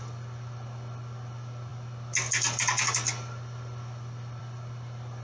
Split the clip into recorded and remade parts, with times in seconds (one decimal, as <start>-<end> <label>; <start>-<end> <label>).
0.0-5.2 recorded